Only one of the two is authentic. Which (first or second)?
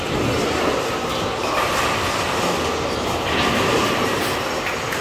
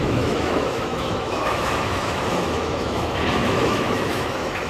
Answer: first